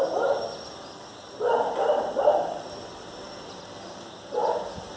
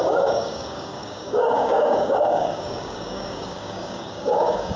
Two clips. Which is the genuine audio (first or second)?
first